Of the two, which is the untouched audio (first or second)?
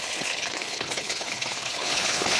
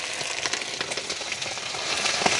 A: second